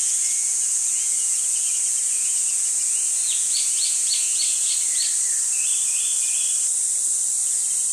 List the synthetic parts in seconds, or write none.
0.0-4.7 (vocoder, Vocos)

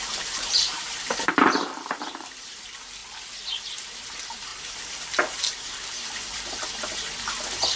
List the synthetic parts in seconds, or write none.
0.0-3.0 (vocoder, BigVGAN v2); 3.8-7.8

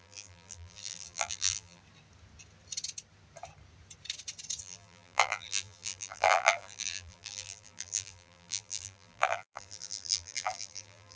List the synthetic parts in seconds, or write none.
0.0-1.8 (vocoder, BigVGAN v2); 4.6-11.2

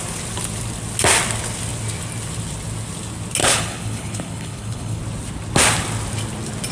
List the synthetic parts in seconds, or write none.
3.4-5.0 (codec, HILCodec)

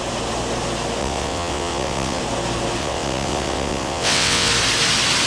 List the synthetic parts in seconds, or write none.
1.0-2.2 (vocoder, WaveNeXt); 2.8-4.5